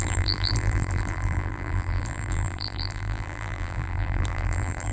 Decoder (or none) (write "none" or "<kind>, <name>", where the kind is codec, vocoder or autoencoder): vocoder, BigVGAN v2